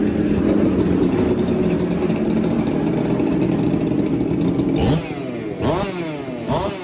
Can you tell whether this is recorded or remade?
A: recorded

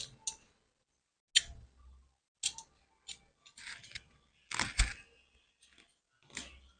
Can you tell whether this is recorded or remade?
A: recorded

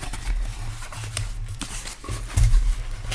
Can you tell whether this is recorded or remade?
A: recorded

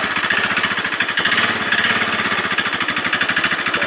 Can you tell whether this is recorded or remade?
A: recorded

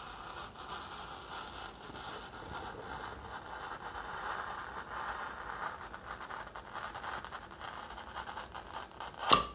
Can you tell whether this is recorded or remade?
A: recorded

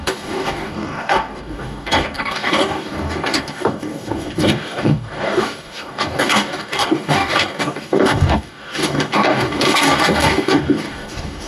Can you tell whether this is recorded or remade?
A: remade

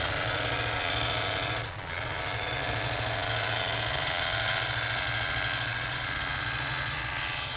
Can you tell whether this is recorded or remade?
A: remade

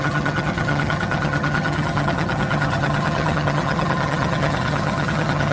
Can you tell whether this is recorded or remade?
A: remade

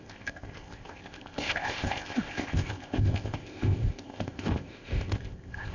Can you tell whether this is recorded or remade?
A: remade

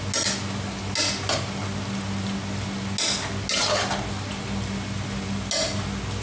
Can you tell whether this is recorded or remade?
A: recorded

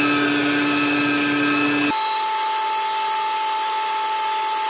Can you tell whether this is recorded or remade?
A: recorded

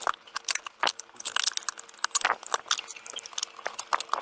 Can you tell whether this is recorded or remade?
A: recorded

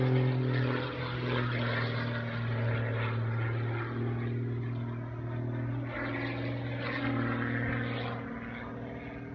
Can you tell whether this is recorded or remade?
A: recorded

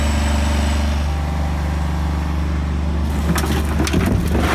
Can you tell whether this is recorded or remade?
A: recorded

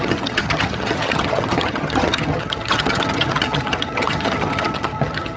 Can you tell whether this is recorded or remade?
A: remade